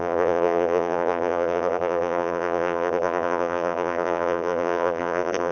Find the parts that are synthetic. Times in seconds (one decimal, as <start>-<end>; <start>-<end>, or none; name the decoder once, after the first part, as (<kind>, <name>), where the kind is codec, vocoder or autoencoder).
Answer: 0.0-5.5 (vocoder, BigVGAN v2)